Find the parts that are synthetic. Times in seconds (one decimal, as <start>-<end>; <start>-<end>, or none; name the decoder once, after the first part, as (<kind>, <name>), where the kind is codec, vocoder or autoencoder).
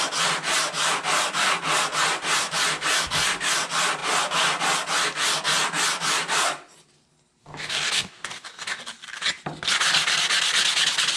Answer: 7.4-8.8 (codec, DAC)